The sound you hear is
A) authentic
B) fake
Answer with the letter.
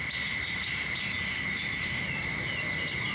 B